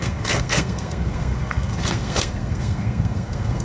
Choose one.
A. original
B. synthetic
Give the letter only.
B